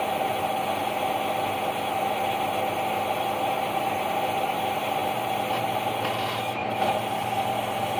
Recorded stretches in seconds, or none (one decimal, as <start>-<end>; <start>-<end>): 0.0-6.6; 7.5-8.0